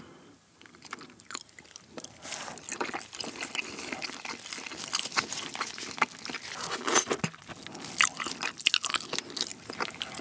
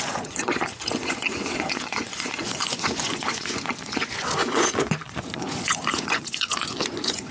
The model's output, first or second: second